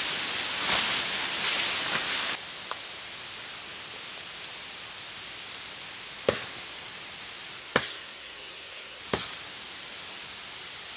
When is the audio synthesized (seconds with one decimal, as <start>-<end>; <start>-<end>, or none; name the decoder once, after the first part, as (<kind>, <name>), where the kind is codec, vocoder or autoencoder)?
7.6-9.0 (codec, SNAC)